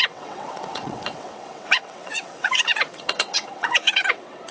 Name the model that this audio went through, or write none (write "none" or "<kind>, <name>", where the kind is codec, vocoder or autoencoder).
vocoder, WaveNeXt